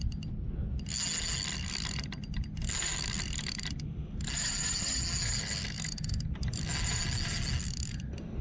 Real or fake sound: real